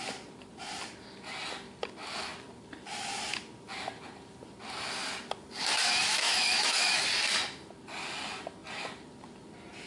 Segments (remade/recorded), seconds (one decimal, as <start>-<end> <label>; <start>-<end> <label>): 0.0-6.1 recorded; 6.1-6.9 remade; 6.9-9.9 recorded